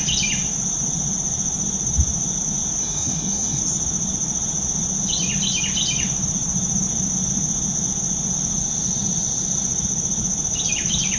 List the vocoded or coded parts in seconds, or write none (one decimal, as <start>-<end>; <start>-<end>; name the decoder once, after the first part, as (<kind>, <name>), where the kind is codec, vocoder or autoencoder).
2.8-3.6 (codec, SNAC)

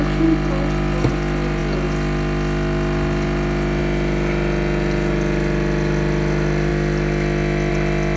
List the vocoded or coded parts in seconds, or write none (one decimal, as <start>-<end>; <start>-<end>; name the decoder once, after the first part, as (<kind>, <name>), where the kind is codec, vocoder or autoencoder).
none

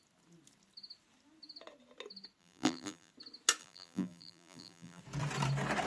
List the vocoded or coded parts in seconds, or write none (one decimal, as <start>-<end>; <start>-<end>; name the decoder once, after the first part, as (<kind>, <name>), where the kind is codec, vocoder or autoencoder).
2.4-3.1 (vocoder, BigVGAN v2); 3.6-5.0